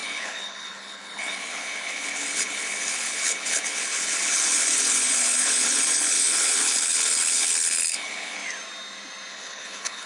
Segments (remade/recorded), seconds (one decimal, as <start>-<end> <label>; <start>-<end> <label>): 0.0-8.4 remade; 8.4-9.3 recorded; 9.3-10.1 remade